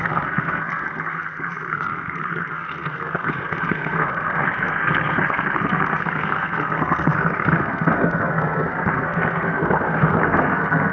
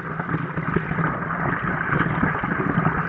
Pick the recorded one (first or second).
second